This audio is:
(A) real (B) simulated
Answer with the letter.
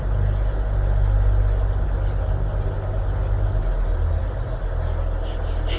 A